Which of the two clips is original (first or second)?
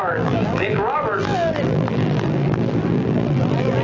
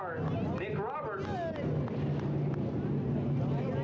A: second